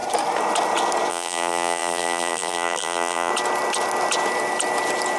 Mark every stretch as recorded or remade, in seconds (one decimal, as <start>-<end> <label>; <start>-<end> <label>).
0.0-1.1 recorded; 1.1-3.3 remade; 3.3-5.2 recorded